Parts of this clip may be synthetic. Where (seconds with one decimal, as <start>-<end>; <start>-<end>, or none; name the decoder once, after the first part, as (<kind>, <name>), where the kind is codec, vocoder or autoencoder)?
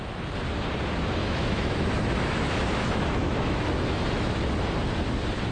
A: 1.2-4.5 (autoencoder, DAC-VAE)